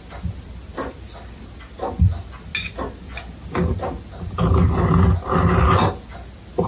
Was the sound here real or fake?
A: real